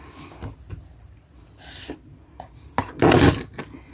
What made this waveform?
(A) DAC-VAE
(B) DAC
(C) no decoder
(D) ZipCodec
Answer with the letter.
C